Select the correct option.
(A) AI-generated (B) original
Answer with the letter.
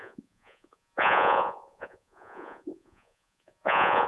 A